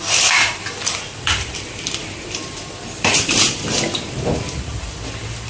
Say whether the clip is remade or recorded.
remade